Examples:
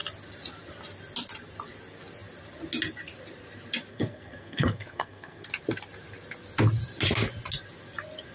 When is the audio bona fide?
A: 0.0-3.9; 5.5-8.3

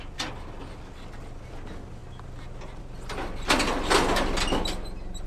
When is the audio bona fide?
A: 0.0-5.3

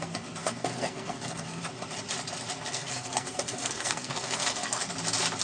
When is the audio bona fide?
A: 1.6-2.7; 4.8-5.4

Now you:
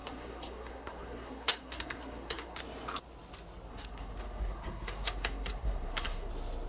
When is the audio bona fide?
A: 2.6-3.7; 6.3-6.7

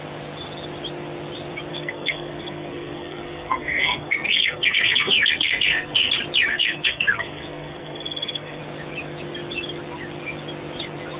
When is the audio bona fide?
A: 0.0-1.7; 6.1-6.5; 8.6-11.2

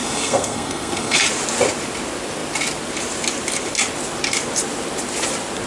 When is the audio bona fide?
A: 1.2-5.7

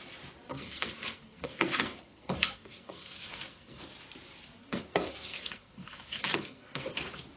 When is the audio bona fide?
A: 0.0-0.5; 3.8-4.6; 7.0-7.4